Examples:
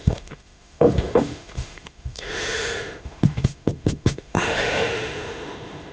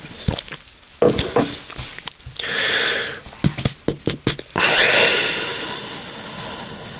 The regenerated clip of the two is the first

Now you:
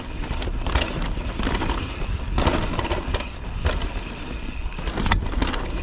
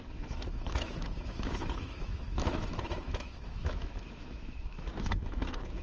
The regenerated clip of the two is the second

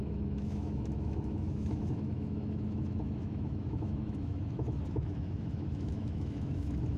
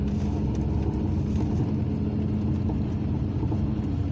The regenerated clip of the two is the first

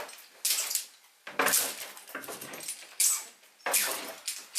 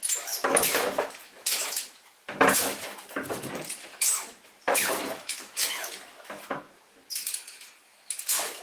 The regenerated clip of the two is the second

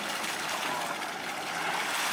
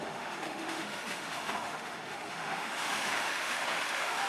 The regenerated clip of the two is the second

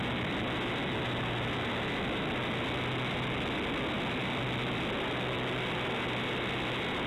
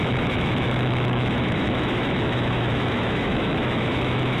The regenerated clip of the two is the second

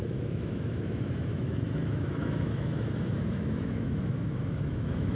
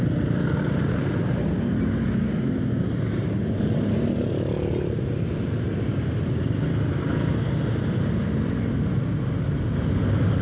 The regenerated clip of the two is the first